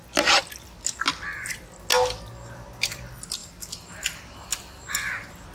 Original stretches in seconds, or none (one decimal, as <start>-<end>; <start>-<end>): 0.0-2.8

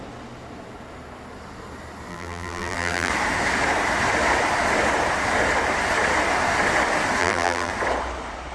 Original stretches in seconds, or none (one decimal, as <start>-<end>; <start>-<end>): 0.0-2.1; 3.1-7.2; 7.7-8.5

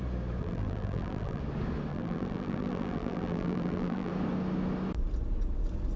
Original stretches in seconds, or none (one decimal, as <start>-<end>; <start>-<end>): 0.0-0.4; 1.4-1.9; 4.1-6.0

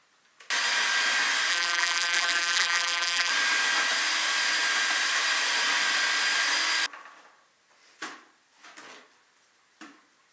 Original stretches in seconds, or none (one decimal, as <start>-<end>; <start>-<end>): 0.0-1.5; 3.3-10.3

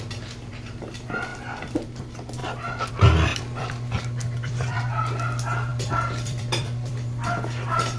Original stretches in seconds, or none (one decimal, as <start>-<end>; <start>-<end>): 0.0-1.3; 2.0-3.3; 4.8-5.7; 7.3-8.0

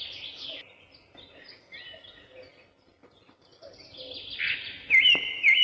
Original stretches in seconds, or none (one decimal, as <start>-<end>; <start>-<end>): 0.0-5.6